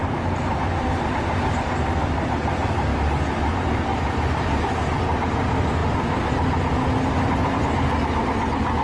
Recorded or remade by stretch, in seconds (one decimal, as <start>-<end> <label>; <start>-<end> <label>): 0.0-3.9 recorded; 3.9-4.8 remade; 4.8-8.8 recorded